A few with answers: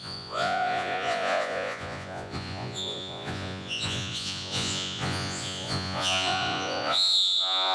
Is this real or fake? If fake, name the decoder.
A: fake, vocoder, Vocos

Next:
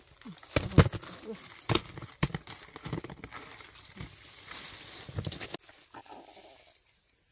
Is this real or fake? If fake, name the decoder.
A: real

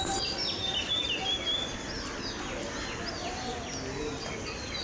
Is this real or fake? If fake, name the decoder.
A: real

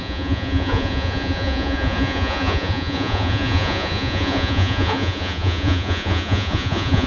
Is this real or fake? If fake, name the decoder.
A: fake, vocoder, Vocos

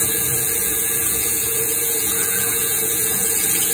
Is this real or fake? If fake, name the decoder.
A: fake, vocoder, Vocos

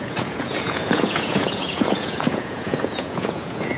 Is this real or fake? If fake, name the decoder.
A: fake, vocoder, Vocos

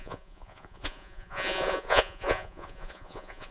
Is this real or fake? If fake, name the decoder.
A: fake, vocoder, Vocos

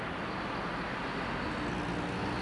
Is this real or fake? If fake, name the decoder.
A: real